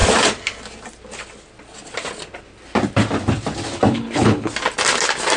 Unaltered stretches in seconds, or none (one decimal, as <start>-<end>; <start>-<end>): 0.0-3.9; 4.5-5.4